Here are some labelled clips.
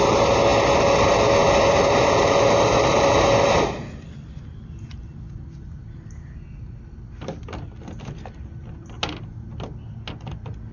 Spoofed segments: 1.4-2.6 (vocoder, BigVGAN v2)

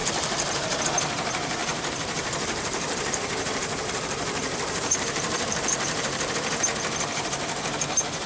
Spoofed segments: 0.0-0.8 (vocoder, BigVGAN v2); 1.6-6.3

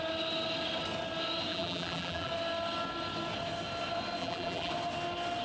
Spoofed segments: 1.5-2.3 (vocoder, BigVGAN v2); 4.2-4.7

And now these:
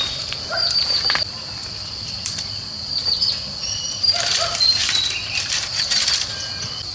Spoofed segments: 0.0-6.9 (vocoder, BigVGAN v2)